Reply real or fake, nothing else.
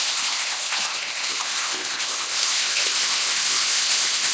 fake